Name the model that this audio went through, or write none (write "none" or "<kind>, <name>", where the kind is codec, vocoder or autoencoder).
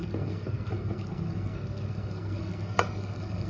codec, SNAC